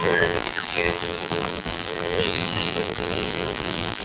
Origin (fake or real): fake